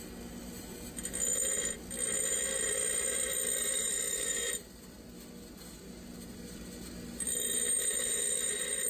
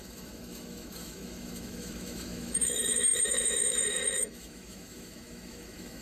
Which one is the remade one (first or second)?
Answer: second